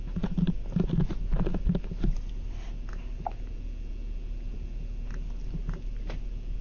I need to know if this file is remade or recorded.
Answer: recorded